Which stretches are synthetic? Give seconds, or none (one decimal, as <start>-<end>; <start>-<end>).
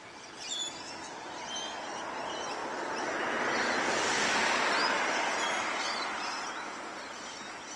none